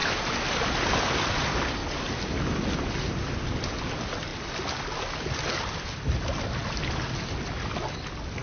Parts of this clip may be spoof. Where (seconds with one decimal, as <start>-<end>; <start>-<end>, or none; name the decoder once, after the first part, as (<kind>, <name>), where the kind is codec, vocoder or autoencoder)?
none